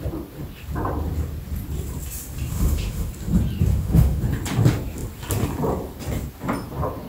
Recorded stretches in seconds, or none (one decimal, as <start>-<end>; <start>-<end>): 0.0-2.5; 3.1-3.7; 4.2-7.1